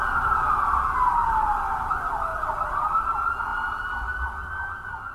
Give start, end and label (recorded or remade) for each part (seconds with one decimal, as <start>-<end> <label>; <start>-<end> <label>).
0.0-2.3 recorded; 2.3-3.1 remade; 3.1-5.1 recorded